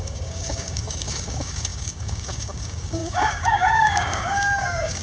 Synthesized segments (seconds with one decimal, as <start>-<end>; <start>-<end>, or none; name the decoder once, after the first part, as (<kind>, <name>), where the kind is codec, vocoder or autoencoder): 0.0-5.0 (codec, DAC)